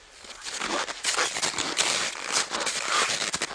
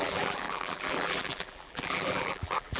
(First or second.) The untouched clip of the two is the first